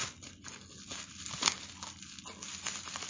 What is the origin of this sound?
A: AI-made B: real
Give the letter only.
B